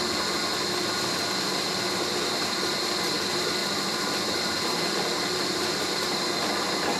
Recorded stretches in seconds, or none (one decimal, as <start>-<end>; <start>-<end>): 0.0-3.6; 6.2-7.0

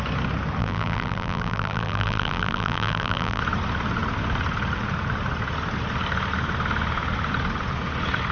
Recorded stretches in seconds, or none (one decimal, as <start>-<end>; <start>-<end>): 0.0-0.6; 3.4-8.3

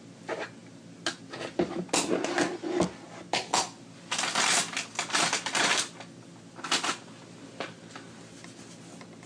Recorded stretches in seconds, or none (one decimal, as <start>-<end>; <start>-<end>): 0.0-9.3